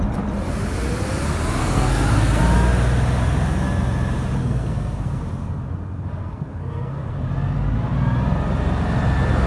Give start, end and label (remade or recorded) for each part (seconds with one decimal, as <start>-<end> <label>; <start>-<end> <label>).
0.0-1.6 recorded; 1.6-2.4 remade; 2.4-4.4 recorded; 4.4-5.2 remade; 5.2-6.2 recorded; 6.2-7.2 remade; 7.2-9.5 recorded